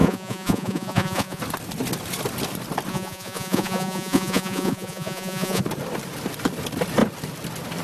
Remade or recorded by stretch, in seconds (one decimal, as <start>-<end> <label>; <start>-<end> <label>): 0.0-1.4 remade; 1.4-2.9 recorded; 2.9-5.6 remade; 5.6-7.8 recorded

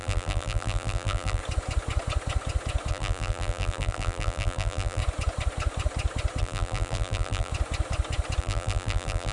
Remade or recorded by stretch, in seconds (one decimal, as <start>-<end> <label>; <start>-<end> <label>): 0.0-1.4 remade; 1.4-2.9 recorded; 2.9-5.0 remade; 5.0-6.4 recorded; 6.4-7.5 remade; 7.5-8.4 recorded; 8.4-9.3 remade